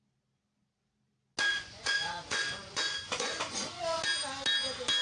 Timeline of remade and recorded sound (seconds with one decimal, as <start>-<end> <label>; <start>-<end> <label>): 0.0-1.5 recorded; 1.5-4.0 remade; 4.0-5.0 recorded